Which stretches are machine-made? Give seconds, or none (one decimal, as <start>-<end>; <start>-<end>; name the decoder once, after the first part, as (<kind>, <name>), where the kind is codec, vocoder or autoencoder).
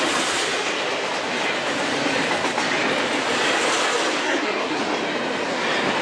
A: 4.2-4.8 (codec, SNAC)